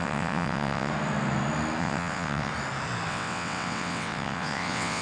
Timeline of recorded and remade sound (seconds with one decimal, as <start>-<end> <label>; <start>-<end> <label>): 0.0-0.9 remade; 0.9-1.8 recorded; 1.8-2.5 remade; 2.5-3.1 recorded; 3.1-5.0 remade